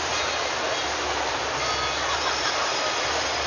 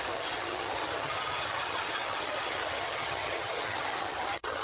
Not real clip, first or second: second